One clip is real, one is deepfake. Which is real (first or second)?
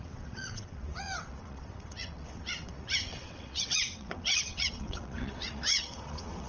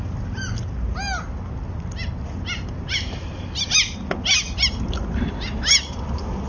second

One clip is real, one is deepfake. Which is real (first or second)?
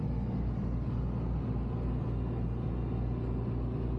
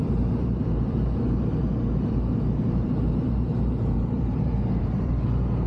first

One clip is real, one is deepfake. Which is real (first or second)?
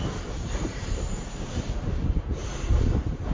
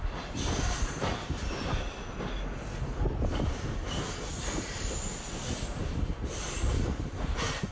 second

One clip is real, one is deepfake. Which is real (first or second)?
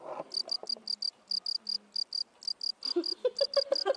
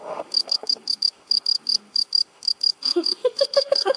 first